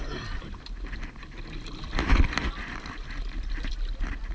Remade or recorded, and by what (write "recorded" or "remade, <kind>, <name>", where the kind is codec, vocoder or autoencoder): recorded